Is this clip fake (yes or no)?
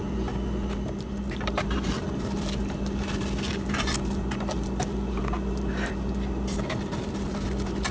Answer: no